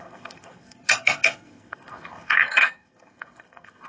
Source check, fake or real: fake